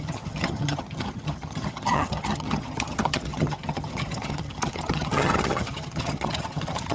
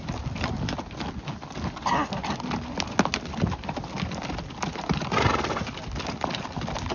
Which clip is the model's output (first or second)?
first